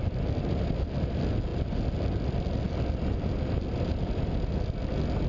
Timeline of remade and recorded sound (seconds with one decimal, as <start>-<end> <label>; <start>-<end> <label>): 0.0-5.3 recorded